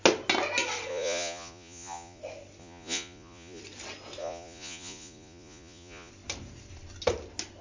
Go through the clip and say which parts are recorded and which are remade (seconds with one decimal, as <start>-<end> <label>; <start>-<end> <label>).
0.0-0.9 recorded; 0.9-2.2 remade; 2.2-2.6 recorded; 2.6-3.6 remade; 3.6-4.2 recorded; 4.2-6.1 remade; 6.1-7.6 recorded